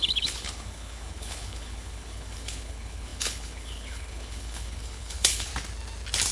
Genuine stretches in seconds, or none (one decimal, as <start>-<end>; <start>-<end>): 5.5-6.3